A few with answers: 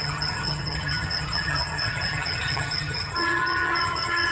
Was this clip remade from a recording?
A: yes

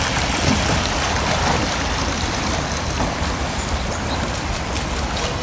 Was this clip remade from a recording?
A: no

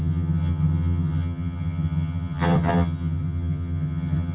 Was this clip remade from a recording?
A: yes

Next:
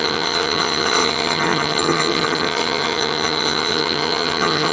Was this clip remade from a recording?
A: yes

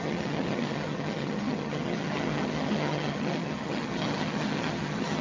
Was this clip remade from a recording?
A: yes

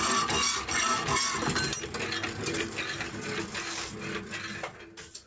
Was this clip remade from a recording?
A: no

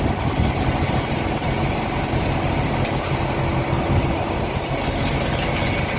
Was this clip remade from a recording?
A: no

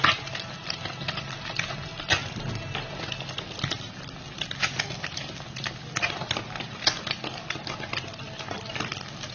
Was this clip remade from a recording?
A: no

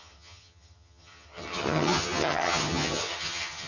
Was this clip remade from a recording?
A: yes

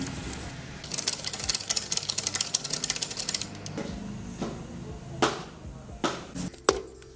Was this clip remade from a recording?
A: no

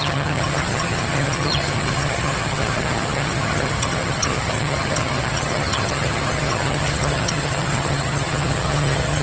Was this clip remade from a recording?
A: yes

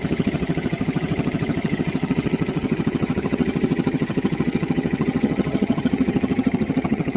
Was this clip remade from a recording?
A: yes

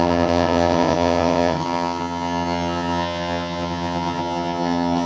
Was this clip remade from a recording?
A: yes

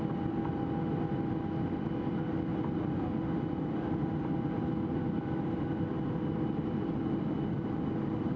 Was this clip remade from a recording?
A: no